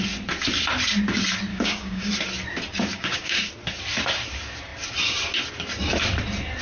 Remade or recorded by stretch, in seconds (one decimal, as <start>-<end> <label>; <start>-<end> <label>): 0.0-1.5 recorded; 1.5-2.1 remade; 2.1-2.9 recorded; 2.9-3.5 remade; 3.5-6.6 recorded